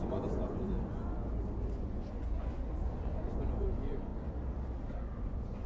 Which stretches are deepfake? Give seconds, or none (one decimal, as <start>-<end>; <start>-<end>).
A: 0.0-1.2; 1.7-4.1; 5.2-5.7